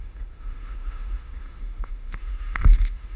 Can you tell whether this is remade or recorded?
remade